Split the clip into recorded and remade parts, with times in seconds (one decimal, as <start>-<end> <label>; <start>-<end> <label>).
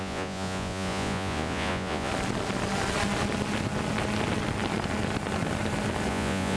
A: 0.0-2.1 remade; 2.1-6.1 recorded; 6.1-6.6 remade